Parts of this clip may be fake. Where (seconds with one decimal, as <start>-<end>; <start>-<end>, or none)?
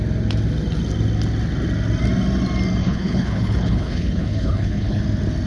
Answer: 2.8-5.0